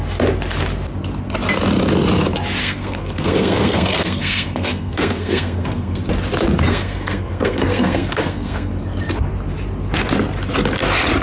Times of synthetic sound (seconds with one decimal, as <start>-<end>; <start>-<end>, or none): 2.6-6.0; 6.7-8.7